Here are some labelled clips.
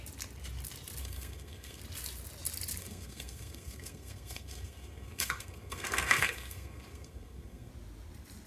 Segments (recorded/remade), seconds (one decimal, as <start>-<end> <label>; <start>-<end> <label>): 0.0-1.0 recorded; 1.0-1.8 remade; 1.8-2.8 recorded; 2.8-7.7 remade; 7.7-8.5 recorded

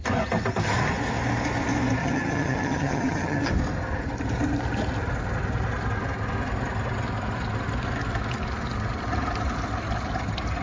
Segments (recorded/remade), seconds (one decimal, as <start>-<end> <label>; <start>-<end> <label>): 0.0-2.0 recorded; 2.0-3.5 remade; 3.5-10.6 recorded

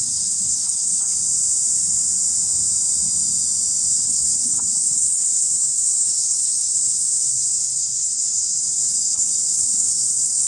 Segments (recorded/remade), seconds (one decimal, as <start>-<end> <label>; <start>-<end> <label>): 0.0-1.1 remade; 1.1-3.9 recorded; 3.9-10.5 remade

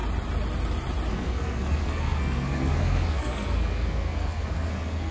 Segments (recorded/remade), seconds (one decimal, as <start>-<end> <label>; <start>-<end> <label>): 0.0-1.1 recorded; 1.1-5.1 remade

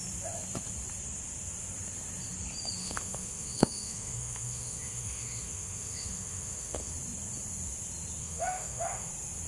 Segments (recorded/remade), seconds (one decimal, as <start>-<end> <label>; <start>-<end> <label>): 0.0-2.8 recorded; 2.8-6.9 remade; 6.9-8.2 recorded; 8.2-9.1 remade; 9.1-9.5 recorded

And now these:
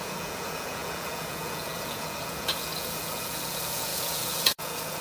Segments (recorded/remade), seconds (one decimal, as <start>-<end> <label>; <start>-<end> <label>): 0.0-5.0 remade